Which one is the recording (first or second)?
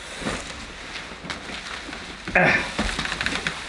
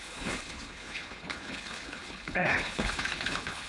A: first